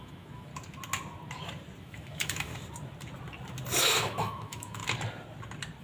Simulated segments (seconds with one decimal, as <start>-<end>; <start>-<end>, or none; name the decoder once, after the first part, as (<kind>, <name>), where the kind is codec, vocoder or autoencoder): 0.0-0.5 (autoencoder, DAC-VAE); 1.8-2.5; 3.8-4.8